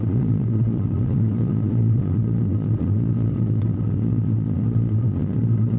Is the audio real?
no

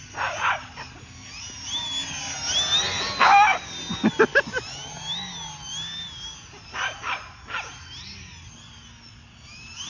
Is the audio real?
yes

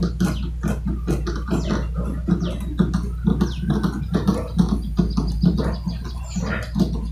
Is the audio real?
yes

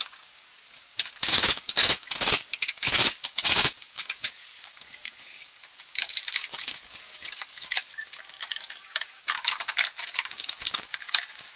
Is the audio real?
no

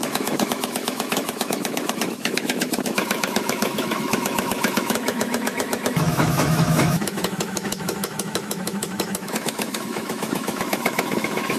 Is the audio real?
no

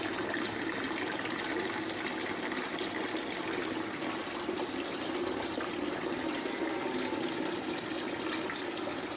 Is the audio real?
yes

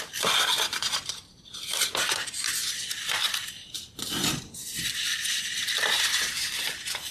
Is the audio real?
no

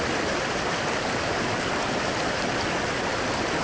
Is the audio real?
yes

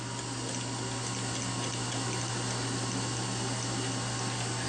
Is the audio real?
yes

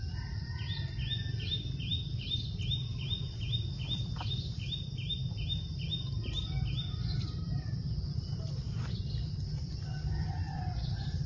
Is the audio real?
yes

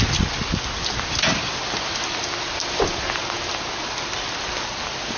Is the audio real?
yes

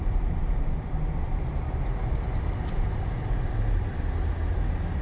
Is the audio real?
yes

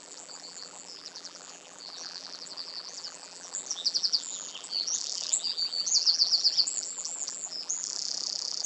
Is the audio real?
no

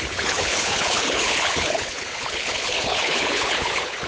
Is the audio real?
no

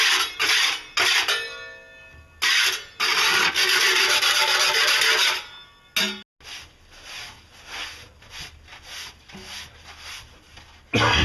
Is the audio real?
yes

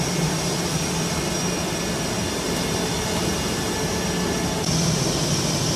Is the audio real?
yes